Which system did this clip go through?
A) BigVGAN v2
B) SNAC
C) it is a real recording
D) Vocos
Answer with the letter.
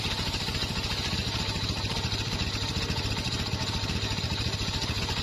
C